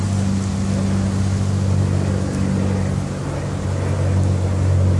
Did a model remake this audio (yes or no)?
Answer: no